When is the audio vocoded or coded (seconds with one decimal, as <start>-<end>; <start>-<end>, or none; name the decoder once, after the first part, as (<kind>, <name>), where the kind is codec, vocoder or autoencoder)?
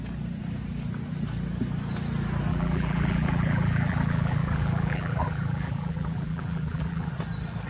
2.5-7.1 (vocoder, BigVGAN v2)